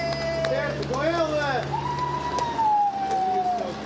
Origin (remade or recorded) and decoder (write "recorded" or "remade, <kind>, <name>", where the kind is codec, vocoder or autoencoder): recorded